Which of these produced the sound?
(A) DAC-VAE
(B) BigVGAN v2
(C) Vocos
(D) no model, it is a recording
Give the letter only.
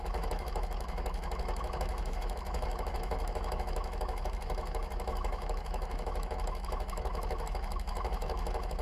A